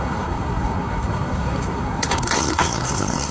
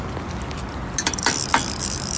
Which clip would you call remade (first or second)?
first